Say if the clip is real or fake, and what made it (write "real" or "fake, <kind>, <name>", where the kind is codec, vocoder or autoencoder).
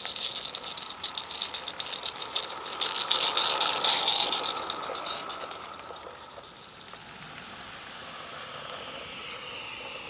real